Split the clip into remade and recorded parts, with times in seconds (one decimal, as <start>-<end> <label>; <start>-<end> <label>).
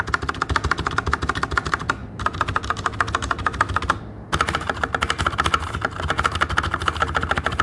0.0-7.6 recorded